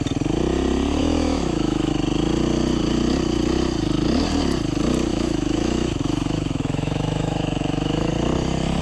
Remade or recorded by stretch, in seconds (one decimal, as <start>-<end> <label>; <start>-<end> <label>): 0.0-1.0 recorded; 1.0-1.9 remade; 1.9-5.1 recorded; 5.1-8.1 remade; 8.1-8.8 recorded